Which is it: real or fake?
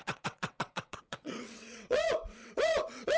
fake